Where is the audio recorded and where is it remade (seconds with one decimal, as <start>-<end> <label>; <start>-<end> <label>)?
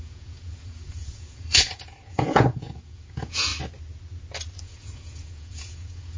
0.0-3.5 remade; 3.5-4.6 recorded; 4.6-6.2 remade